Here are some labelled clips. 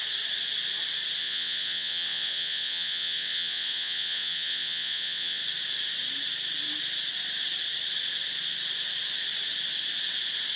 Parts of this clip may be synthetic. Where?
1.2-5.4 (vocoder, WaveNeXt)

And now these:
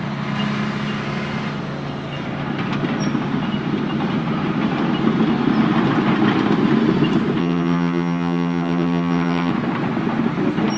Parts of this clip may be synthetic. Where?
7.4-9.5 (vocoder, HiFi-GAN)

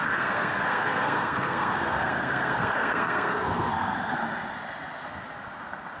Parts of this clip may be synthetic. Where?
0.0-4.2 (codec, SNAC)

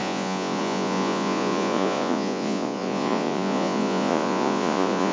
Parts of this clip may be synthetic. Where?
0.0-5.1 (vocoder, Vocos)

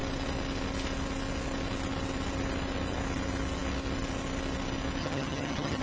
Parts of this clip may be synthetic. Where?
5.0-5.8 (vocoder, HiFi-GAN)

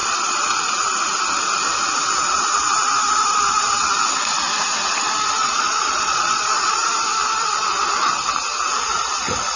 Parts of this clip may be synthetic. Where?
0.0-0.7 (vocoder, Vocos); 5.4-6.9

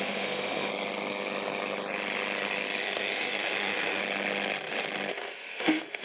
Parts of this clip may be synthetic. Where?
0.0-0.7 (autoencoder, DAC-VAE); 2.8-4.0; 5.1-6.0

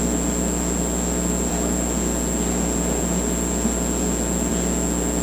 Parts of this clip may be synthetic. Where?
none